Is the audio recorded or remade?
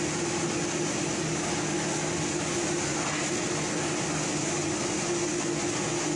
recorded